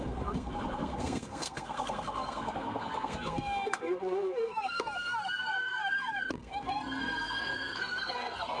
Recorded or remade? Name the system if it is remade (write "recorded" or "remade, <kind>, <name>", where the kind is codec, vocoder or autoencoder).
remade, codec, SNAC